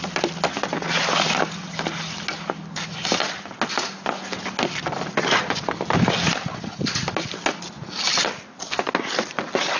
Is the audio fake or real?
real